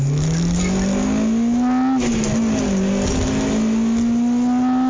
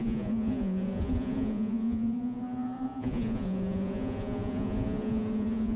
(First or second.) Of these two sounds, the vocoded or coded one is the second